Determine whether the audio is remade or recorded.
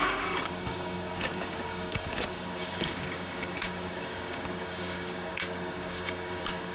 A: remade